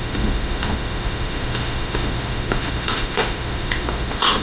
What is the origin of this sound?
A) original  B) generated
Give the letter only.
B